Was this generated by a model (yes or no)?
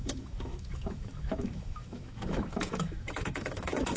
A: yes